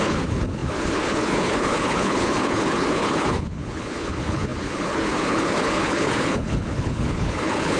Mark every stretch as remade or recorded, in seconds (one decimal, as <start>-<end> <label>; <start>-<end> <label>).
0.0-7.8 remade